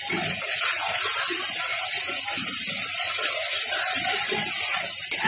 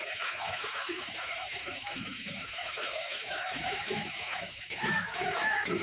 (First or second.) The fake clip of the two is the second